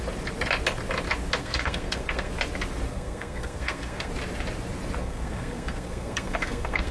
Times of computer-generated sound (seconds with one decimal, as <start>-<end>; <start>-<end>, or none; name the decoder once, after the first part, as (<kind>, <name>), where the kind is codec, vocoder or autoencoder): 1.4-2.3 (codec, SNAC); 2.9-4.1; 5.0-6.9